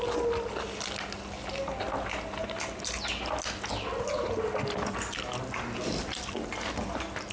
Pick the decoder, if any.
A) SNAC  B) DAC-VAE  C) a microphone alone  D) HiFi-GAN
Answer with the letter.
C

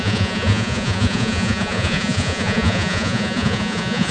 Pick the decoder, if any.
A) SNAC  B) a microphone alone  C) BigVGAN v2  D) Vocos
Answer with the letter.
D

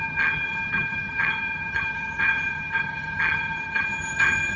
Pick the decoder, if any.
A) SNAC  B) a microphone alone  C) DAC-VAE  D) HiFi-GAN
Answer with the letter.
D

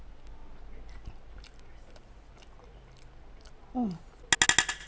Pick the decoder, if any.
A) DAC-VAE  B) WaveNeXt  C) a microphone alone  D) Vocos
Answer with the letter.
C